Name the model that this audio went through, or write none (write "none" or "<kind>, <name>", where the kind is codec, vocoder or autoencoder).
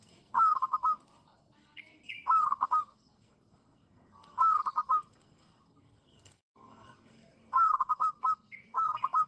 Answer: codec, SNAC